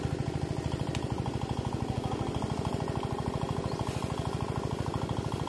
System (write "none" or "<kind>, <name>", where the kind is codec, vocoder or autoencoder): none